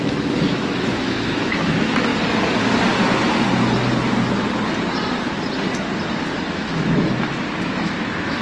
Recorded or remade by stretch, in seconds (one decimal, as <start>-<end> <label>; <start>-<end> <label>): 0.0-2.1 remade; 2.1-6.5 recorded; 6.5-8.4 remade